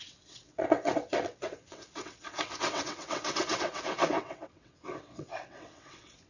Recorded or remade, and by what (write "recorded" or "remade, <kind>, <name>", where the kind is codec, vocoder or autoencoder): remade, vocoder, WaveNeXt